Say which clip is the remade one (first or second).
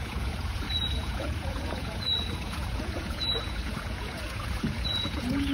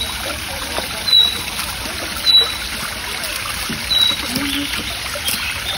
first